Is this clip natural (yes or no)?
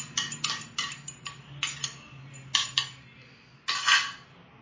yes